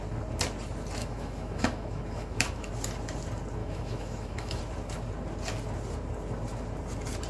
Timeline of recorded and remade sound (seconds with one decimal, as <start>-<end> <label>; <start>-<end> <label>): 0.0-1.0 recorded; 1.0-2.7 remade; 2.7-3.6 recorded; 3.6-4.6 remade; 4.6-7.3 recorded